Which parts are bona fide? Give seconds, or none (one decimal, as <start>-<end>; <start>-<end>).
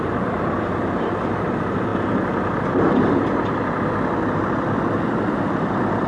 0.0-6.1